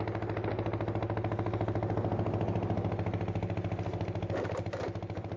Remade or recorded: recorded